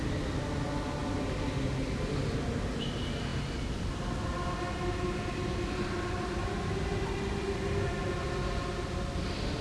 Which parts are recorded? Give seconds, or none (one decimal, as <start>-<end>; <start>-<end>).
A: 0.0-9.6